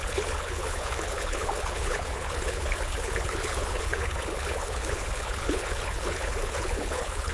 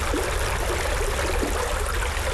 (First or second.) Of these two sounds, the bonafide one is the second